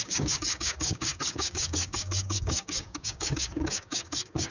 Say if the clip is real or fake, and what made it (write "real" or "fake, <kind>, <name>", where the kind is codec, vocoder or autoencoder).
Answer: fake, codec, DAC